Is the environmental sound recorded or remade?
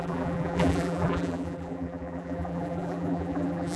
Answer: remade